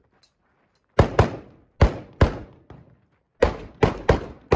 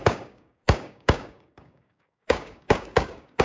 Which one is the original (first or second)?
first